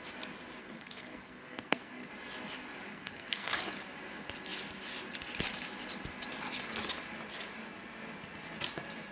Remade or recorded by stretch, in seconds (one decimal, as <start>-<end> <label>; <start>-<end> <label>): 0.0-0.6 recorded; 0.6-2.1 remade; 2.1-2.9 recorded; 2.9-3.5 remade; 3.5-9.1 recorded

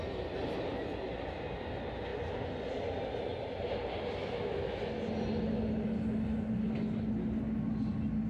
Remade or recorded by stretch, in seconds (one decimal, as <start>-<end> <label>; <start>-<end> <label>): 0.0-4.2 recorded; 4.2-4.8 remade; 4.8-8.3 recorded

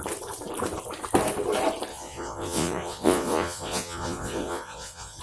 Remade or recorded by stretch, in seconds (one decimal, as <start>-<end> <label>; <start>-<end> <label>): 0.0-1.9 recorded; 1.9-5.2 remade